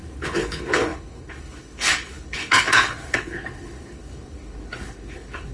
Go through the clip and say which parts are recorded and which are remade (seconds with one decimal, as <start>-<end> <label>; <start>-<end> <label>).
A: 0.0-5.5 remade